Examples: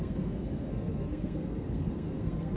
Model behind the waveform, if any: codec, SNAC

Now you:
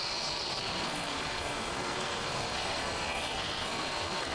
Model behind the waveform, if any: codec, SNAC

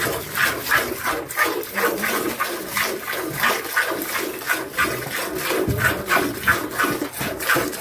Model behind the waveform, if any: none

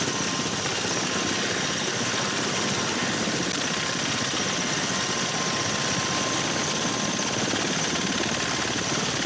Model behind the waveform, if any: none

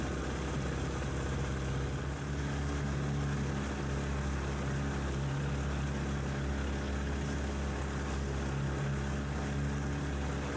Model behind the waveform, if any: none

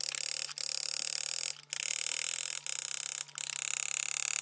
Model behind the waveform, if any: none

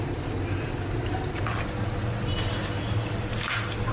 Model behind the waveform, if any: none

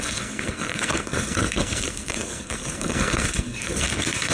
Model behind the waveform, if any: codec, SNAC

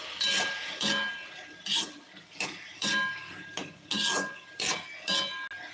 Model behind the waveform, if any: none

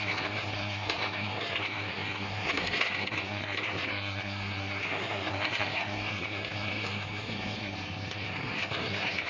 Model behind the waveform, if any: codec, SNAC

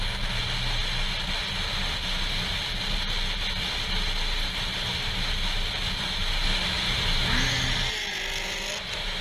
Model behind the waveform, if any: none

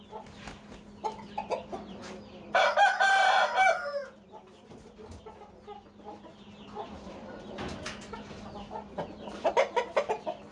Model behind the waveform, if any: none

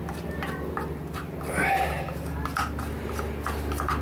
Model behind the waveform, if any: none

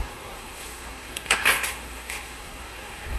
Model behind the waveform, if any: codec, SNAC